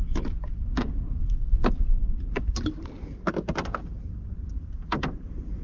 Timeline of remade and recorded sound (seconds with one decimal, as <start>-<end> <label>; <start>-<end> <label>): 0.0-5.6 recorded